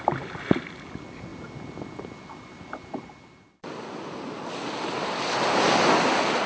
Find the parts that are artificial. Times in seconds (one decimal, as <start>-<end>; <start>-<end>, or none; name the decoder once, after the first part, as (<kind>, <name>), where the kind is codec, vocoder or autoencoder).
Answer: none